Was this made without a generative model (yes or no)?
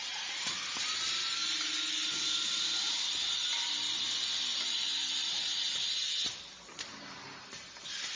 yes